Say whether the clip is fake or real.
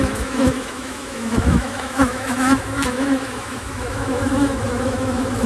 fake